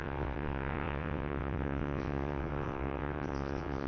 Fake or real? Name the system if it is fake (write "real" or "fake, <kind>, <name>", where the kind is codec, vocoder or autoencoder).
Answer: fake, vocoder, WaveNeXt